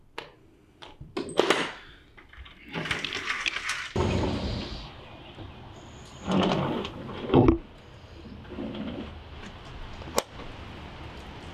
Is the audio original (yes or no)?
yes